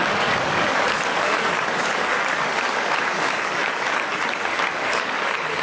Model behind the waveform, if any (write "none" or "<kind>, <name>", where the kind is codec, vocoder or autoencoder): codec, DAC